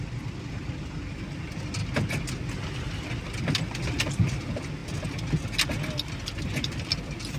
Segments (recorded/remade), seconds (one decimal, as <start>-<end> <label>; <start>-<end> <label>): 0.0-7.4 recorded